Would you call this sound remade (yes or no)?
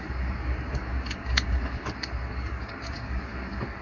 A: yes